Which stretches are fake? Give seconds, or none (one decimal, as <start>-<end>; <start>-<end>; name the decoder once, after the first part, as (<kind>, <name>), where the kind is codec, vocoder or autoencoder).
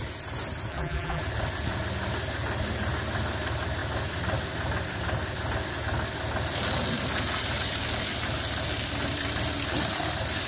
0.7-1.2 (vocoder, BigVGAN v2)